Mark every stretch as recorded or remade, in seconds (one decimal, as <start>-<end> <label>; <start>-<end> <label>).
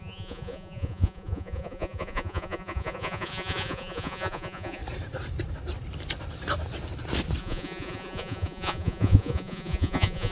0.0-4.8 remade; 4.8-7.4 recorded; 7.4-10.3 remade